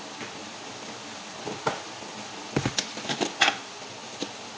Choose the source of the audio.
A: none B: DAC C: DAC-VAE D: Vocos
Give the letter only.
A